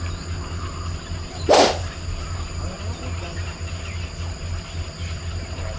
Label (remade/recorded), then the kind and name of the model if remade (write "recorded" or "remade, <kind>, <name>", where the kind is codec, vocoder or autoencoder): recorded